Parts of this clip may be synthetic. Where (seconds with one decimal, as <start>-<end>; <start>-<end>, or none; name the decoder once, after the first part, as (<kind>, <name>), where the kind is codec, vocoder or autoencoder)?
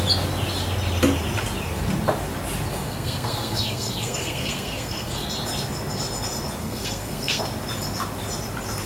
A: 2.7-5.3 (codec, SNAC); 6.6-7.4